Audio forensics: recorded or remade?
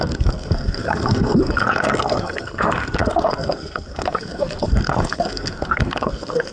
remade